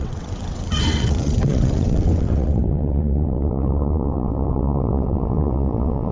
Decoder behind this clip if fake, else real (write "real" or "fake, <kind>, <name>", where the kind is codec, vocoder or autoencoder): fake, vocoder, WaveNeXt